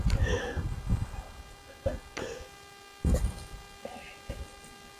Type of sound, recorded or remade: recorded